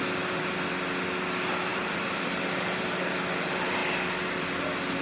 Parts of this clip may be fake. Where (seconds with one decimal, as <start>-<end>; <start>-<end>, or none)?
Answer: 1.7-2.5